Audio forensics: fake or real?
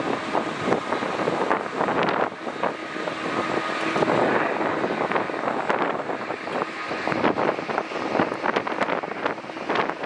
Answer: real